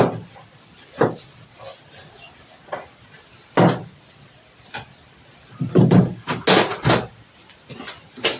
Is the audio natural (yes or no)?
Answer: yes